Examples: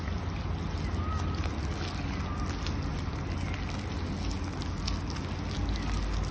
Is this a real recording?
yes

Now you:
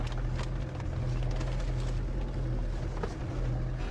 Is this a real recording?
yes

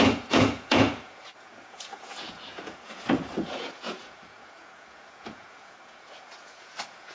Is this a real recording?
no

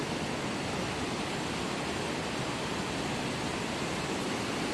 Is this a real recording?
yes